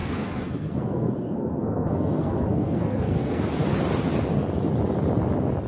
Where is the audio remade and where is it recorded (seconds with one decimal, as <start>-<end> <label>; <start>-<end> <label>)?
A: 0.0-3.4 remade; 3.4-5.7 recorded